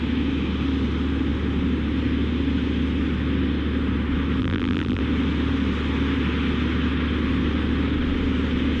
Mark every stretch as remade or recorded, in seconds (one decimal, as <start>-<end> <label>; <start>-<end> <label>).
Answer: 0.0-4.4 recorded; 4.4-5.0 remade; 5.0-8.8 recorded